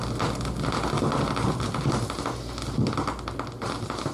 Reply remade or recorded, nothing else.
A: recorded